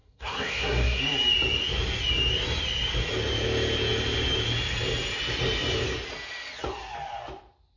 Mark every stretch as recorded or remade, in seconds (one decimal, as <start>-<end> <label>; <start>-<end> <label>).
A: 0.0-1.0 remade; 1.0-7.8 recorded